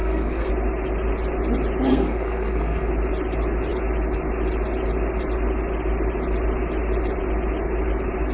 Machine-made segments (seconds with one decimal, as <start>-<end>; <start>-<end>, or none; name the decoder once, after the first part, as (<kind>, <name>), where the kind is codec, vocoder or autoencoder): 0.0-0.5 (codec, SNAC); 1.9-2.9

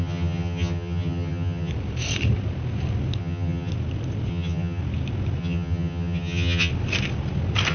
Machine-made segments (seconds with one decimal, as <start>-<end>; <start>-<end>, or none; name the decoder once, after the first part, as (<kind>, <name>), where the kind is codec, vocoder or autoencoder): 0.0-1.7 (vocoder, HiFi-GAN); 3.2-3.7; 4.3-4.8; 5.4-6.7

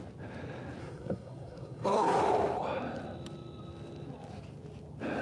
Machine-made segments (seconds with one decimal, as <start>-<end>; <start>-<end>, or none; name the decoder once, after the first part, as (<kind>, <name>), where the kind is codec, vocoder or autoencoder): 0.8-2.2 (codec, SNAC)

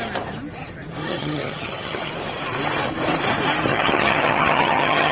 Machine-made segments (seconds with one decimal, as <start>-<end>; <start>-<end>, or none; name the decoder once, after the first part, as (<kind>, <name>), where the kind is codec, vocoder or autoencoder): 1.0-2.1 (vocoder, HiFi-GAN); 3.7-5.1

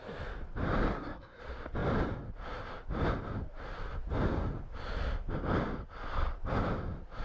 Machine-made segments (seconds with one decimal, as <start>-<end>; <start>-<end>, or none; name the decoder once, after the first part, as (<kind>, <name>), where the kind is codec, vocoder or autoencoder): 0.9-1.4 (codec, SNAC)

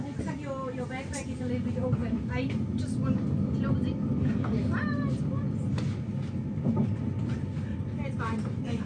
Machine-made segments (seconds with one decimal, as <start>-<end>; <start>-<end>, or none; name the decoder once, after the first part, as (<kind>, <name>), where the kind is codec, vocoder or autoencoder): none

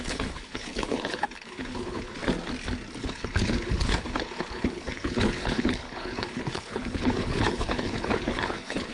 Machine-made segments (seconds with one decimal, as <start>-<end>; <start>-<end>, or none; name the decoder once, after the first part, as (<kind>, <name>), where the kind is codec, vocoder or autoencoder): 0.0-2.2 (codec, HILCodec); 3.0-8.9